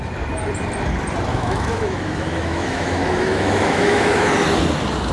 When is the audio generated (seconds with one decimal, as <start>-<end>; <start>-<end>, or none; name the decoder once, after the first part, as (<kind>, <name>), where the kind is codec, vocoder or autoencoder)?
1.3-4.3 (autoencoder, DAC-VAE)